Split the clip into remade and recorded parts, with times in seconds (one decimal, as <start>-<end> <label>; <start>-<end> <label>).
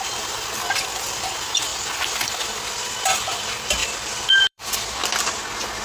0.0-5.0 remade; 5.0-5.8 recorded